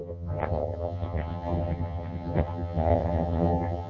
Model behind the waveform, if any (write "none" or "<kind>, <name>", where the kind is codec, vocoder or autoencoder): vocoder, HiFi-GAN